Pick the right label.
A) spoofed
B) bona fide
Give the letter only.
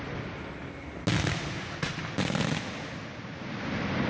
B